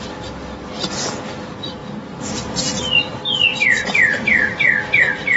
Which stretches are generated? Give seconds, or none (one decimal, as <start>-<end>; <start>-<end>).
1.8-2.8; 3.5-4.2